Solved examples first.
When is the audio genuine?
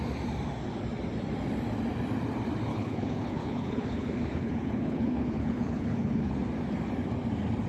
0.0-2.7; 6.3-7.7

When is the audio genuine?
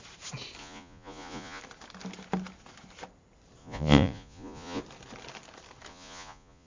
0.0-0.6; 1.6-3.6; 4.8-5.9